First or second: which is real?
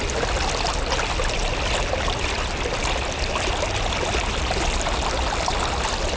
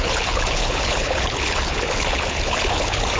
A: first